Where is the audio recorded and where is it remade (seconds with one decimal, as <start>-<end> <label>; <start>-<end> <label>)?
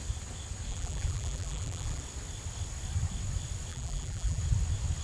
0.0-0.7 recorded; 0.7-2.0 remade; 2.0-3.7 recorded; 3.7-4.4 remade; 4.4-5.0 recorded